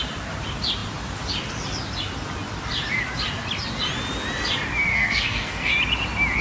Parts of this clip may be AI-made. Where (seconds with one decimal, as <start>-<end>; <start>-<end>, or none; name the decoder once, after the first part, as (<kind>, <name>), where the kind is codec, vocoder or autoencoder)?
4.9-5.7 (codec, SNAC)